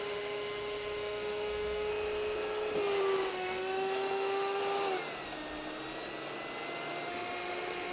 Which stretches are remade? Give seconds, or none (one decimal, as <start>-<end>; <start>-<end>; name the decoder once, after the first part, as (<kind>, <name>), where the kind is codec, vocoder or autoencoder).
0.0-1.9 (autoencoder, DAC-VAE); 3.3-4.6; 7.1-7.9